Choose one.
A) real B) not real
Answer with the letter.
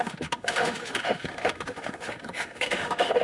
B